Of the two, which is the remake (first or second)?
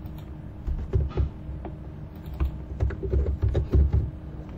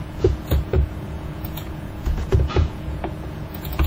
second